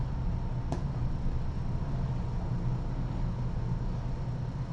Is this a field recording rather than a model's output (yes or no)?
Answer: yes